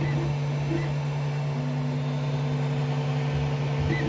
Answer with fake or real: real